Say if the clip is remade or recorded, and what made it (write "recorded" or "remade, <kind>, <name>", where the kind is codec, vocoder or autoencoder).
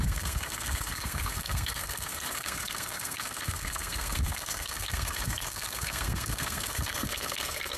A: remade, codec, SNAC